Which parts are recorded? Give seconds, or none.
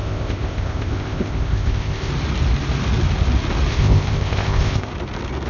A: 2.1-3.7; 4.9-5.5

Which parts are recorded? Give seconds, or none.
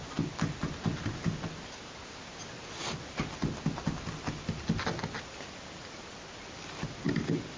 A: 0.0-7.6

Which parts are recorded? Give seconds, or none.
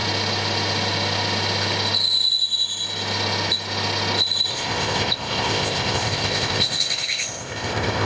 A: 0.0-4.5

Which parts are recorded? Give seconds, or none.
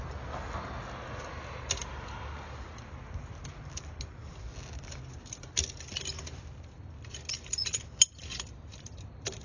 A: 0.0-9.4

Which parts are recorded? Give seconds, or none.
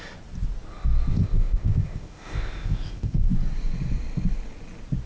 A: 0.0-1.1; 3.3-5.1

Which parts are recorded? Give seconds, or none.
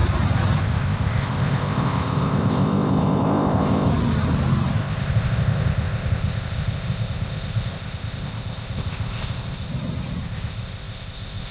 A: 0.0-0.6; 3.9-4.8; 9.7-10.2